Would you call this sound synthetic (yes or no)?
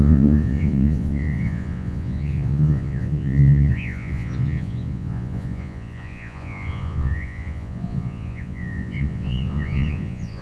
yes